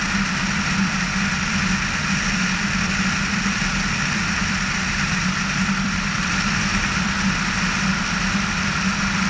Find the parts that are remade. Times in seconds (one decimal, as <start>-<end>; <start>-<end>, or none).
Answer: 4.2-6.4